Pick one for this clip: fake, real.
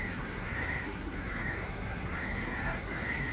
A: fake